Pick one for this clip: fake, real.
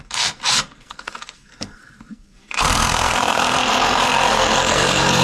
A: fake